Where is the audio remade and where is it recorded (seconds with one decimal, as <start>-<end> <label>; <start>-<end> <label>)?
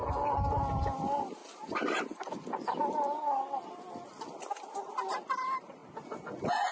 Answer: 0.0-6.7 recorded